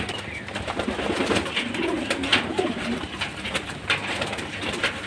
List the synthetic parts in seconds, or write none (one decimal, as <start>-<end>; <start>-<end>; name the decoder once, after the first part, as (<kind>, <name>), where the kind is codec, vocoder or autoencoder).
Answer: 2.3-3.0 (vocoder, BigVGAN v2)